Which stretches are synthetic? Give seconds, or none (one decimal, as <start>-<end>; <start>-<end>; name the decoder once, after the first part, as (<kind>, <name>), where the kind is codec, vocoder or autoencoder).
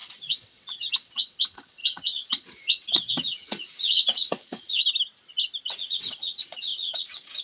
0.0-4.8 (vocoder, WaveNeXt); 5.7-7.4